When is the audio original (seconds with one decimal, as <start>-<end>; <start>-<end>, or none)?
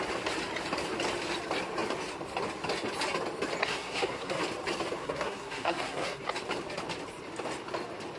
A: 0.0-3.6; 4.4-5.0; 6.2-8.2